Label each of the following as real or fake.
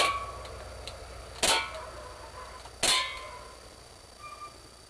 real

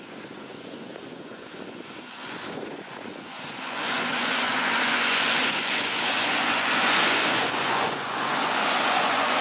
fake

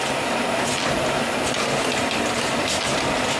real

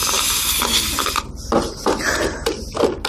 real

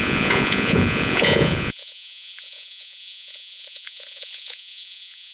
fake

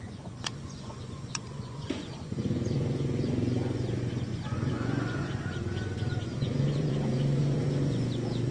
fake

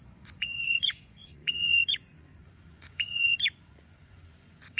fake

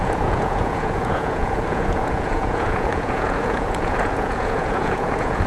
fake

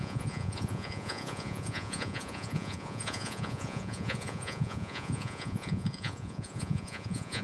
fake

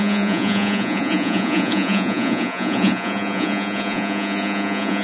fake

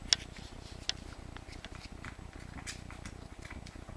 real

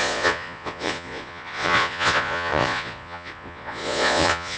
fake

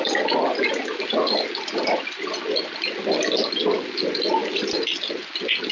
real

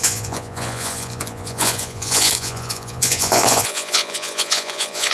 fake